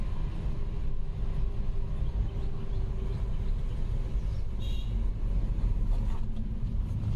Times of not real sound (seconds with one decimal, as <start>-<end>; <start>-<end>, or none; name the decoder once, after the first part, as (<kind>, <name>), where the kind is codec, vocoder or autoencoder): none